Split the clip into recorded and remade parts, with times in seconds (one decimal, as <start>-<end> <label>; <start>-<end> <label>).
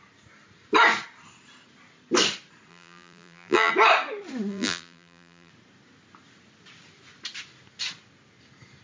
0.0-2.7 recorded; 2.7-3.7 remade; 3.7-4.5 recorded; 4.5-5.5 remade; 5.5-8.8 recorded